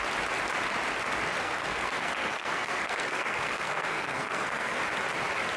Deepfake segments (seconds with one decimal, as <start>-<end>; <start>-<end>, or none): 1.4-4.8